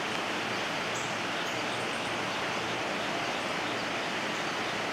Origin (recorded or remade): recorded